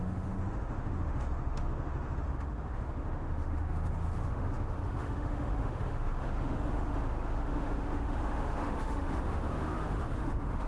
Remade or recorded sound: remade